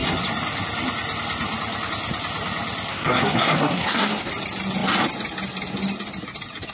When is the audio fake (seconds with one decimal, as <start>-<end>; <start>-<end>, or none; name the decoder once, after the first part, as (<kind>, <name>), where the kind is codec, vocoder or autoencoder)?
2.9-4.3 (codec, SNAC)